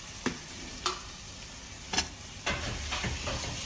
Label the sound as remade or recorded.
recorded